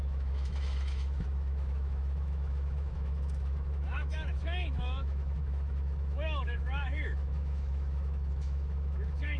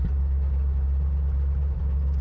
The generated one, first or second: first